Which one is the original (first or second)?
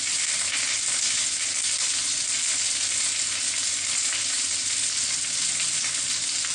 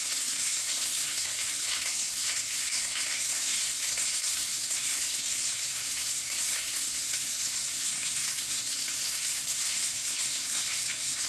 first